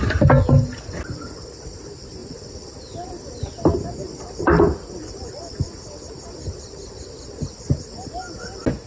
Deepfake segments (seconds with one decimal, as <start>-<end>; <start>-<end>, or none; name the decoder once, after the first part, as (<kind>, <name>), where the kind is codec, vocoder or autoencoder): none